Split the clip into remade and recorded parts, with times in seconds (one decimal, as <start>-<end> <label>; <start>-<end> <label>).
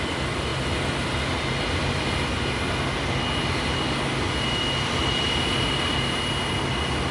0.0-7.1 recorded